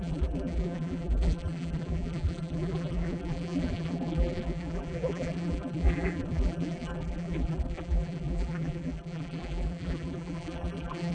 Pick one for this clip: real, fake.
fake